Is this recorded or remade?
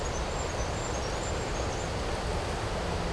recorded